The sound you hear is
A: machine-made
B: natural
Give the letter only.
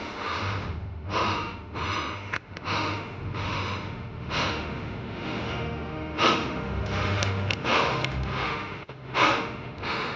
A